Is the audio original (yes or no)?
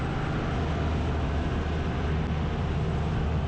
yes